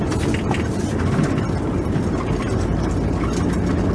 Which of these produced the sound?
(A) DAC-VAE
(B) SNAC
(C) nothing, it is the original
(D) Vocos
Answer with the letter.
C